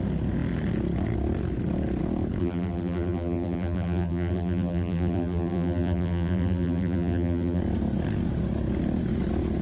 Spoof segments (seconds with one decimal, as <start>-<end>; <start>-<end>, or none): 2.4-7.6